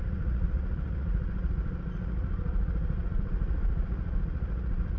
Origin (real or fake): fake